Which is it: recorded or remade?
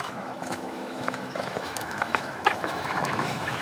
remade